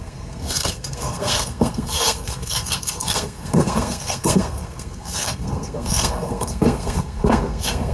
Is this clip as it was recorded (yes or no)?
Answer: no